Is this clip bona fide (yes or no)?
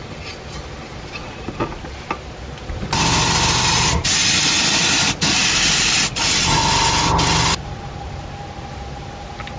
yes